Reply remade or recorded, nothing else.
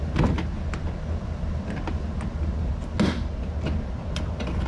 recorded